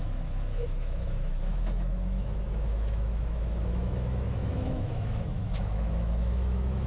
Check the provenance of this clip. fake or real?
fake